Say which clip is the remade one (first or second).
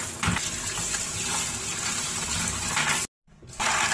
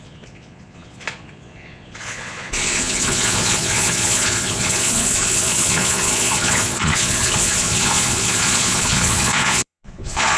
second